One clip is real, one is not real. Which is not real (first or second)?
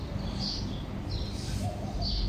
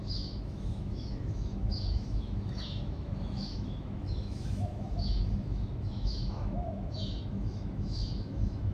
second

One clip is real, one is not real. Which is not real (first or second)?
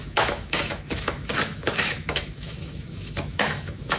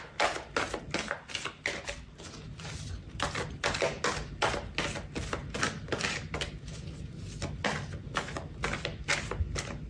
first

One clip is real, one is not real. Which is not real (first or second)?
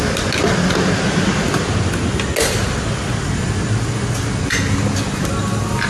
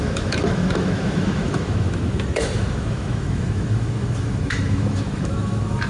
second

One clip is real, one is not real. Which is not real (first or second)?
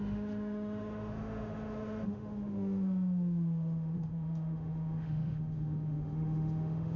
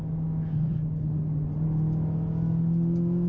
first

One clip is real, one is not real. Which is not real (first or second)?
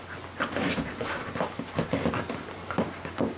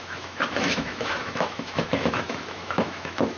second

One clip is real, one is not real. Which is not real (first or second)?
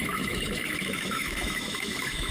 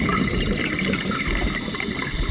first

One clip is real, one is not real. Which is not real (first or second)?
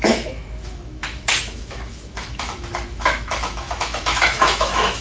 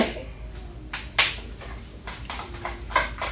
first